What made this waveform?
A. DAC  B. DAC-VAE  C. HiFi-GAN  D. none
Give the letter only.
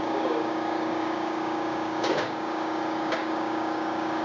A